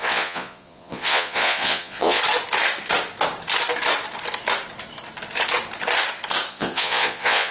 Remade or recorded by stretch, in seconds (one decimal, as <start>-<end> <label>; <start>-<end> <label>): 0.0-2.2 remade; 2.2-6.5 recorded; 6.5-7.5 remade